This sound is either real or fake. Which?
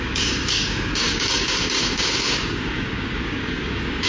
fake